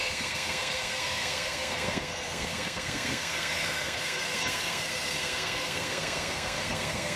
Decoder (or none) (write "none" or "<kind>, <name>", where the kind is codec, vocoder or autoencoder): codec, SNAC